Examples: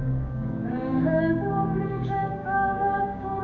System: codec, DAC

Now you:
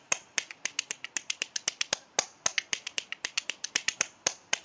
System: none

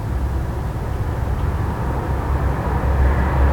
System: none